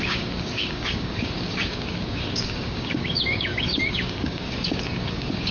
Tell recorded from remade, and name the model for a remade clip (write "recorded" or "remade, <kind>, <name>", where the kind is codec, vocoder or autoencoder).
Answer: remade, codec, DAC